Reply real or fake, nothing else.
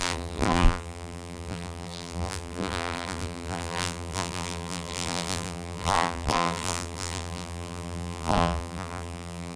fake